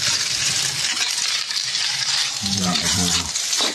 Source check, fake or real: fake